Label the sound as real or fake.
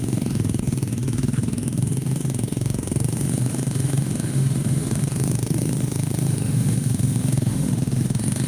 fake